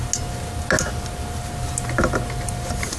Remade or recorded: recorded